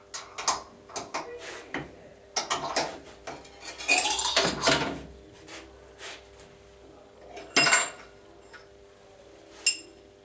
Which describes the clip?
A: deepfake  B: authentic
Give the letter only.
B